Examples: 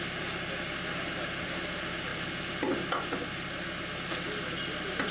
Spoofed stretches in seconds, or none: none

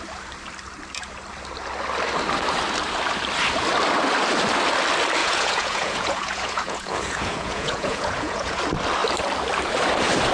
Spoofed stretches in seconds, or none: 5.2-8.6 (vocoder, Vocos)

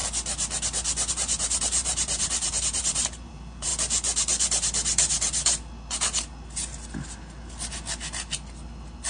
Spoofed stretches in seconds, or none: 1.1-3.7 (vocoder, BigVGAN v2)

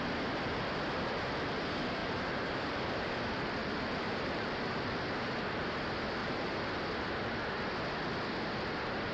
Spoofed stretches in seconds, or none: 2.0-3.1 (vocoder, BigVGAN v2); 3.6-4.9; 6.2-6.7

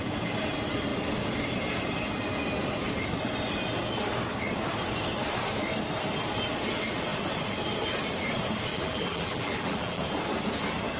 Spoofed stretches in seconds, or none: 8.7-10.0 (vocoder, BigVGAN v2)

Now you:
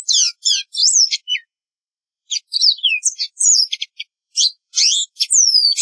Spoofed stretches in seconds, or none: 0.0-5.8 (vocoder, Vocos)